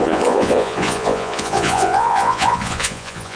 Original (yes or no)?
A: no